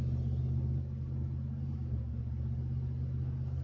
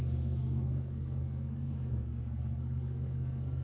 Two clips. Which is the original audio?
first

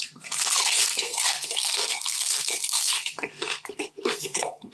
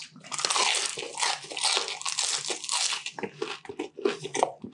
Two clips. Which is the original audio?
second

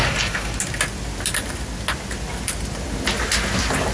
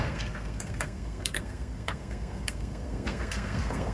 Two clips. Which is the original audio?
first